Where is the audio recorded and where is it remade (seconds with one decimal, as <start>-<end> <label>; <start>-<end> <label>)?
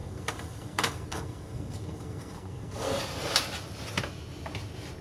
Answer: 0.0-3.0 remade; 3.0-5.0 recorded